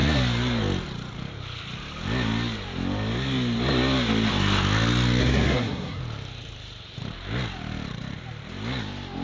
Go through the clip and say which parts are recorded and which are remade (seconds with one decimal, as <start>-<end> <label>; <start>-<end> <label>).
0.0-5.2 recorded; 5.2-6.0 remade; 6.0-9.2 recorded